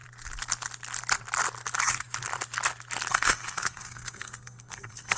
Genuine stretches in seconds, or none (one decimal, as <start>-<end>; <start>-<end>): 0.0-3.1